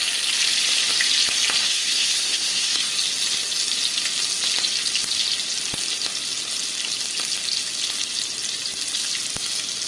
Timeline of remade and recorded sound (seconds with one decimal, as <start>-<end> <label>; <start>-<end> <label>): 0.0-1.6 recorded; 1.6-2.9 remade; 2.9-9.9 recorded